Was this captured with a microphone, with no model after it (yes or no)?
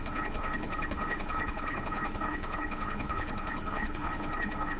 no